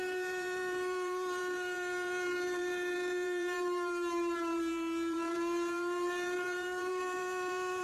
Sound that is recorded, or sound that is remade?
remade